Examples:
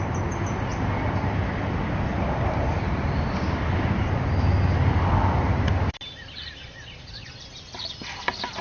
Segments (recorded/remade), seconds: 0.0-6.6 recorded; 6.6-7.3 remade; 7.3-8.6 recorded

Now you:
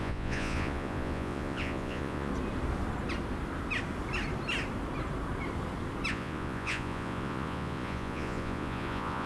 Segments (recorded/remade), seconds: 0.0-2.3 remade; 2.3-6.1 recorded; 6.1-9.3 remade

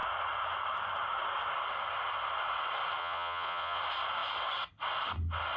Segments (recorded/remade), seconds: 0.0-3.0 recorded; 3.0-3.8 remade; 3.8-5.6 recorded